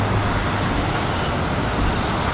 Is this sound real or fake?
real